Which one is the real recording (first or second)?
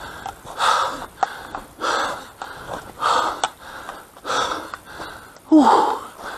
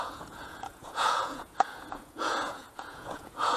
first